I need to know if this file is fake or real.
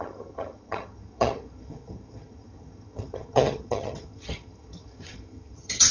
fake